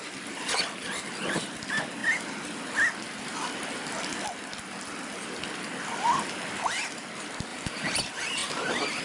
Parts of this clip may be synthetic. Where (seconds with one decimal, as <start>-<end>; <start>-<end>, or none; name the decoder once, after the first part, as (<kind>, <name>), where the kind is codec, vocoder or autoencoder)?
7.5-8.0 (vocoder, BigVGAN v2)